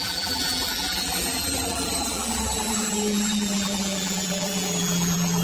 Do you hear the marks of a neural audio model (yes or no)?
yes